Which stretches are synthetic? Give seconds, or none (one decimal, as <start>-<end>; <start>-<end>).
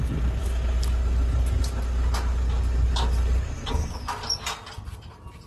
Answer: none